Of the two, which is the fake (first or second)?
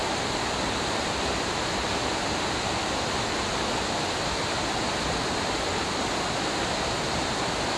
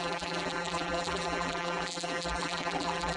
second